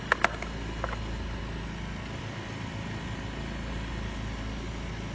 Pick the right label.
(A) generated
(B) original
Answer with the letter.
B